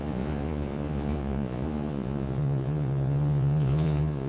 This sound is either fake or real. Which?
fake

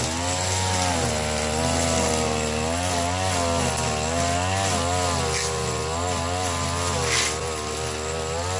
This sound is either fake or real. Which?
real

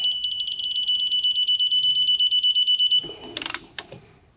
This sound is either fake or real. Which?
real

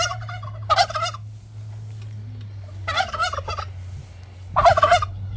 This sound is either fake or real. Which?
real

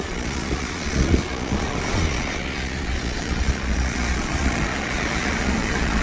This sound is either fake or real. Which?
fake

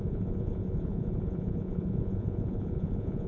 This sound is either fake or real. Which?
fake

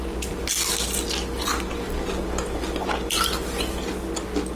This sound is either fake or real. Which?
real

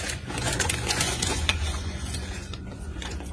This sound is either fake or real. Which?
fake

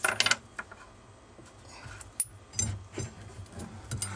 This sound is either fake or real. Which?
real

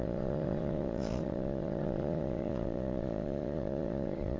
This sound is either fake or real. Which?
fake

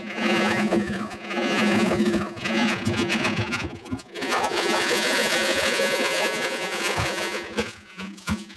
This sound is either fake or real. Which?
fake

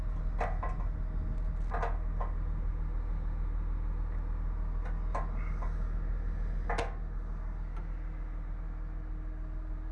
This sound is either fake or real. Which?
real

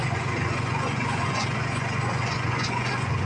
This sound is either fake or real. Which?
fake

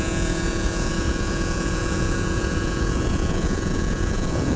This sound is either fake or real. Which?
fake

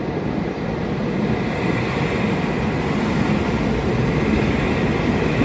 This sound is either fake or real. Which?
real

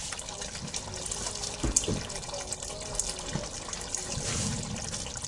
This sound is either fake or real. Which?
real